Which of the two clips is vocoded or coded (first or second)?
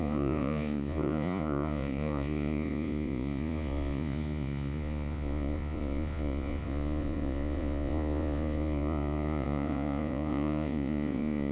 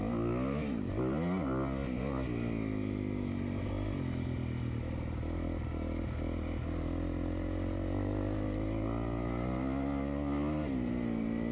first